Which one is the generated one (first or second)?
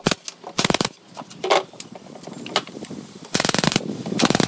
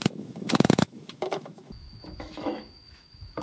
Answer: second